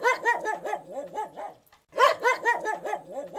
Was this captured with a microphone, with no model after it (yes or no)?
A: yes